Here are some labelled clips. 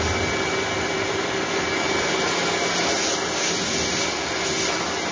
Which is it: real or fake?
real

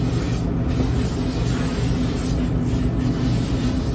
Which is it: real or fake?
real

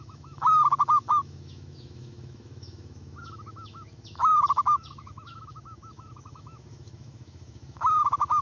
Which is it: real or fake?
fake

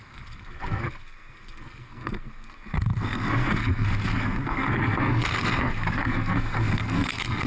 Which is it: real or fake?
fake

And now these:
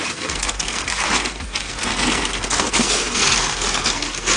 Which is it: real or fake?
fake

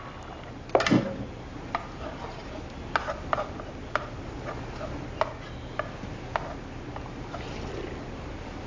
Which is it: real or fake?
real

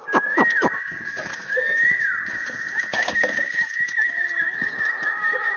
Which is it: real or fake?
fake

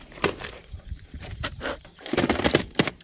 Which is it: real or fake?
fake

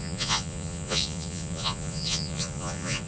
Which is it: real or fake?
fake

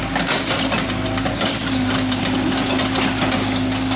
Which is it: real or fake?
real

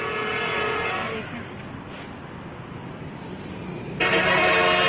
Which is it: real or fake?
real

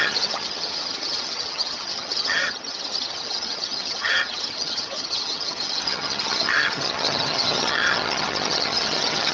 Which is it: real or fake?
fake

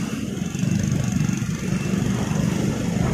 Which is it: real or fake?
real